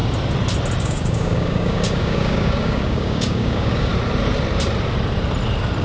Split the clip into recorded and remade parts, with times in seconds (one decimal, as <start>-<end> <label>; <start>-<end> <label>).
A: 0.0-0.8 recorded; 0.8-3.9 remade; 3.9-5.8 recorded

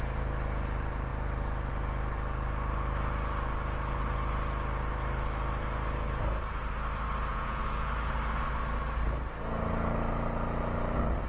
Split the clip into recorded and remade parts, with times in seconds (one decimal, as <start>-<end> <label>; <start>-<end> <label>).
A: 0.0-7.3 recorded; 7.3-7.9 remade; 7.9-11.3 recorded

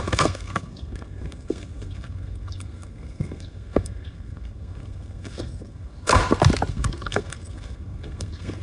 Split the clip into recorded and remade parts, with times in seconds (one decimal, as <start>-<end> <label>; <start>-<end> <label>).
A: 0.0-6.2 remade; 6.2-6.7 recorded; 6.7-8.6 remade

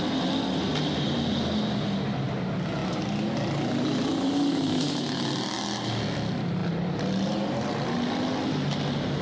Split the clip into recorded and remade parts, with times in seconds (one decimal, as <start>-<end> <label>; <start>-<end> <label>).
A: 0.0-9.2 recorded

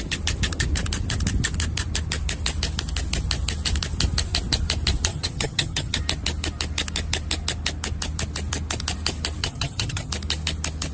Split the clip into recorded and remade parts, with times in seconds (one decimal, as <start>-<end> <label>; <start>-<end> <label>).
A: 0.0-5.1 recorded; 5.1-6.0 remade; 6.0-9.4 recorded; 9.4-10.1 remade; 10.1-10.9 recorded

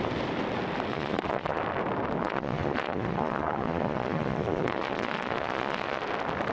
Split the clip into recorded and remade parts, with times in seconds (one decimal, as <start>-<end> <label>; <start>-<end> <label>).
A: 0.0-0.9 recorded; 0.9-1.6 remade; 1.6-2.2 recorded; 2.2-6.0 remade; 6.0-6.5 recorded

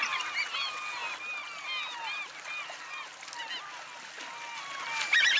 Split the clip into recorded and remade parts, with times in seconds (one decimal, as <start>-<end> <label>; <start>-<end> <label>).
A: 0.0-5.4 recorded

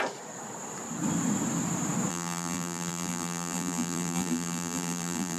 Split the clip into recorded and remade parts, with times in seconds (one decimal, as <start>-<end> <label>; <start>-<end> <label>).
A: 0.0-2.1 recorded; 2.1-5.4 remade